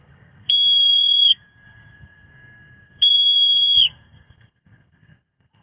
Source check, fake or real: fake